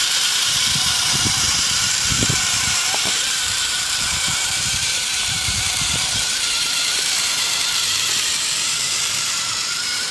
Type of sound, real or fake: fake